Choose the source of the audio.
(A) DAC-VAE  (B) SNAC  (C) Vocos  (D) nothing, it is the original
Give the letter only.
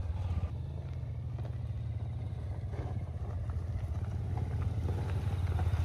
D